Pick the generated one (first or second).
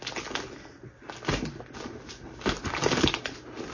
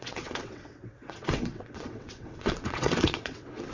second